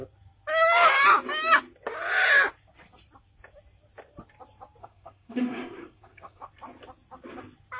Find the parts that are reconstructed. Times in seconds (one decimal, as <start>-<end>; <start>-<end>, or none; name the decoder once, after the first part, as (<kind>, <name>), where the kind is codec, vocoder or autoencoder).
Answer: 4.8-6.4 (codec, SNAC)